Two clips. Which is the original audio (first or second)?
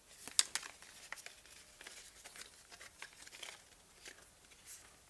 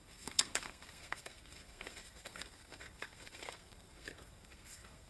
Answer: first